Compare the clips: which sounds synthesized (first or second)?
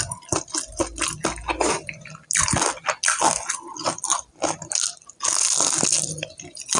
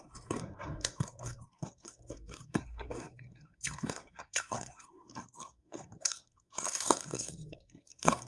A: second